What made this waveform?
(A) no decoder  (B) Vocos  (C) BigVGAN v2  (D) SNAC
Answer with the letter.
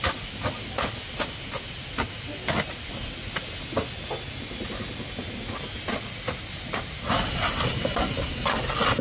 A